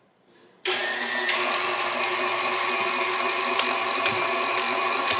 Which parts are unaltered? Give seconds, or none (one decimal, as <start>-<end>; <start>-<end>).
0.0-5.2